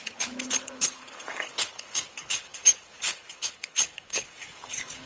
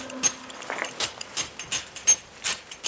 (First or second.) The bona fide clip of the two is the second